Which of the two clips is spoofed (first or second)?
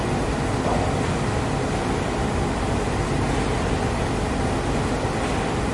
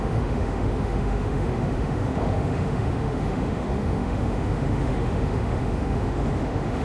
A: second